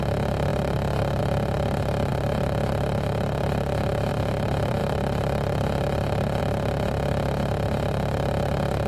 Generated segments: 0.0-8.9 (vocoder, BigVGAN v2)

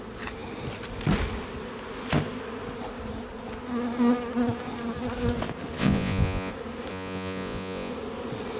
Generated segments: 5.8-6.5 (vocoder, Vocos); 6.9-7.9

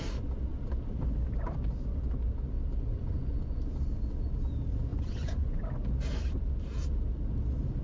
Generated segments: 2.9-3.6 (vocoder, Vocos); 4.9-5.6

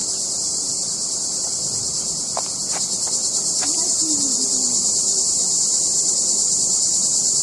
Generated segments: none

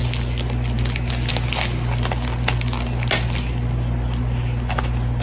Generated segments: none

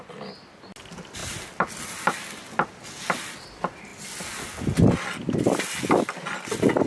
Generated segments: none